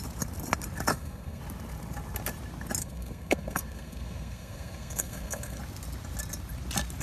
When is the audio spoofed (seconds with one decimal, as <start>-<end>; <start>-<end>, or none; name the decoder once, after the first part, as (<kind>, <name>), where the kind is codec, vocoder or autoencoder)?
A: 0.9-1.4 (codec, SNAC); 2.8-5.6